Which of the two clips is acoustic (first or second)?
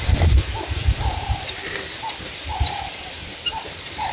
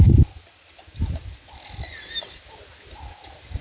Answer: second